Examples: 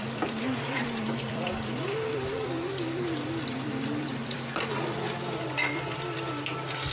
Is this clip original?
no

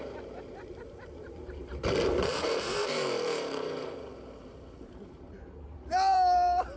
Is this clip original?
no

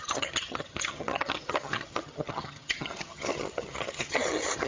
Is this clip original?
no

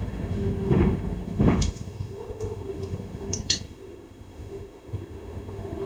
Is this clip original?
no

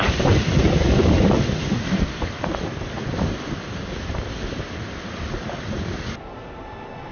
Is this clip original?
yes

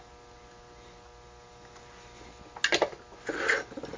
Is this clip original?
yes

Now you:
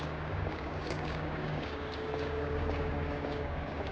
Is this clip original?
no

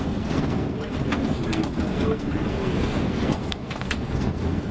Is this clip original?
no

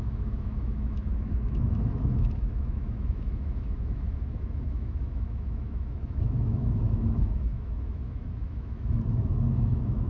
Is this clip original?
no